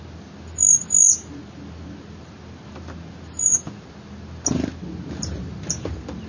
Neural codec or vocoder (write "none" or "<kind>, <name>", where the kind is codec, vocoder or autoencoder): none